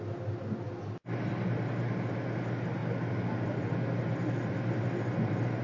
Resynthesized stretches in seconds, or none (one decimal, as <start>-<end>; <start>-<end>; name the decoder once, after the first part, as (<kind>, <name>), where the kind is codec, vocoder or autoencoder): none